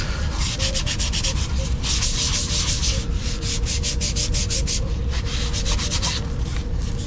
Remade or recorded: recorded